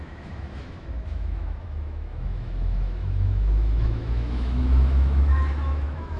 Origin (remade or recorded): remade